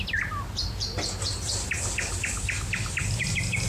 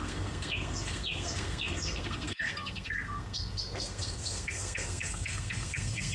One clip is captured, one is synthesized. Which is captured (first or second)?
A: first